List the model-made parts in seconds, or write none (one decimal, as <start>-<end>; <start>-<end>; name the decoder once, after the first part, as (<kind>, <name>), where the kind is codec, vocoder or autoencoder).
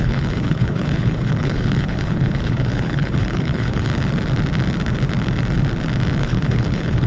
0.0-3.9 (codec, HILCodec); 6.2-7.1